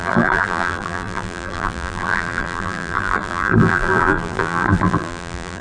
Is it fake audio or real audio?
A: fake